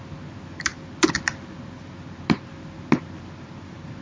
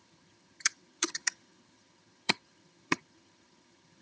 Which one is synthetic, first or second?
second